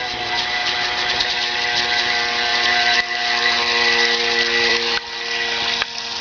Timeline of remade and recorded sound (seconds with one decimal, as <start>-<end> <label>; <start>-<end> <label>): 0.0-6.2 recorded